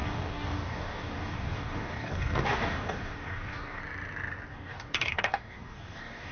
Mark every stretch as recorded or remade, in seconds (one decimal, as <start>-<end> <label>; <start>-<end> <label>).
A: 0.0-3.8 remade; 3.8-4.5 recorded; 4.5-6.3 remade